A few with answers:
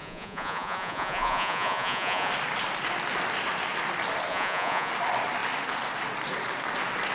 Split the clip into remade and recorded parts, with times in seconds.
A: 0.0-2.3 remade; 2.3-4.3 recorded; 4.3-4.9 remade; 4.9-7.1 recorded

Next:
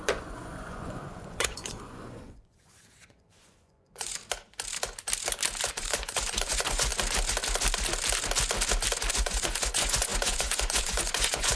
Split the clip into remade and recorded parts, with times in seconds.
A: 0.0-4.2 remade; 4.2-5.7 recorded; 5.7-6.9 remade; 6.9-9.1 recorded; 9.1-11.6 remade

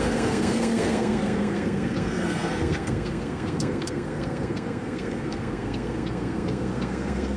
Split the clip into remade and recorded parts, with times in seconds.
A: 0.0-7.4 remade

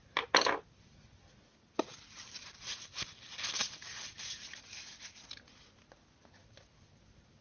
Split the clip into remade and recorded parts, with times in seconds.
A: 0.0-7.4 recorded

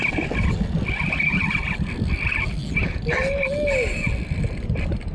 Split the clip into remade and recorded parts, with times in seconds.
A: 0.0-5.1 recorded

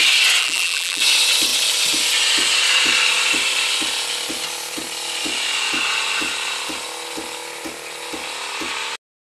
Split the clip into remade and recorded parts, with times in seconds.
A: 0.0-0.4 recorded; 0.4-1.0 remade; 1.0-9.4 recorded

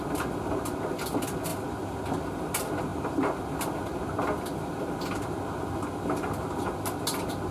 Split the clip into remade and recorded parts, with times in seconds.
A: 0.0-7.5 recorded